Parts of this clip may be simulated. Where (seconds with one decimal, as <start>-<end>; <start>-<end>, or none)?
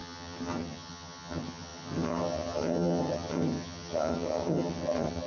0.0-5.3